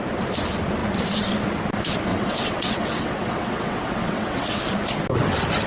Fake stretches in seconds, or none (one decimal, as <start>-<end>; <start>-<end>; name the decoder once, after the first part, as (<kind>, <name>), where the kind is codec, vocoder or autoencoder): 2.1-4.6 (vocoder, WaveNeXt)